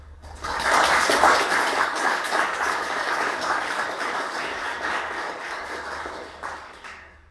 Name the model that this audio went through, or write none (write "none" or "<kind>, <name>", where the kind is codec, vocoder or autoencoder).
codec, DAC